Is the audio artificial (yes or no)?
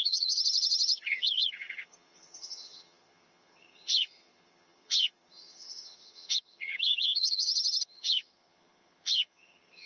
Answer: yes